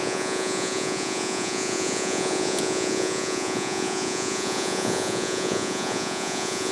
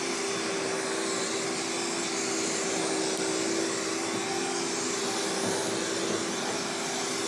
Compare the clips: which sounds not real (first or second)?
first